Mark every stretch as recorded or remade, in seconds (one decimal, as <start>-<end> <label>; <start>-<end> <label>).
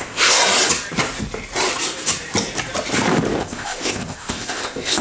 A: 0.0-0.4 remade; 0.4-3.4 recorded; 3.4-5.0 remade